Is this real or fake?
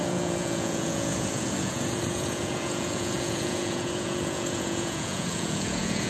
fake